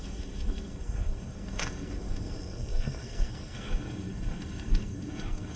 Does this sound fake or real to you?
fake